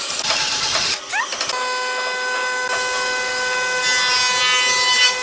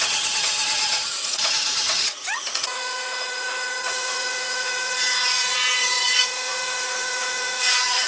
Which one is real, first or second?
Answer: first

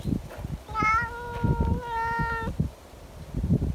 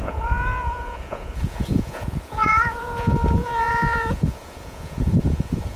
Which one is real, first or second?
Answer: first